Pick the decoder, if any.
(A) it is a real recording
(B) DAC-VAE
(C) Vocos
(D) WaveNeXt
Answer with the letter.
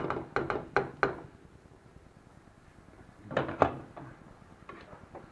A